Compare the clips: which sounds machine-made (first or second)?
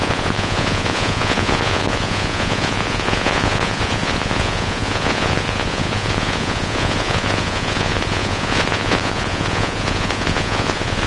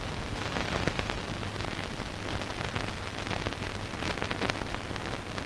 first